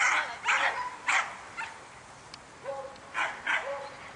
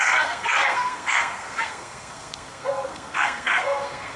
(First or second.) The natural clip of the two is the first